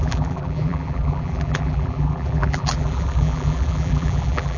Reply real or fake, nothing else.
fake